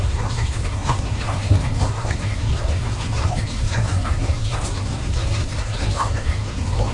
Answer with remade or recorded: remade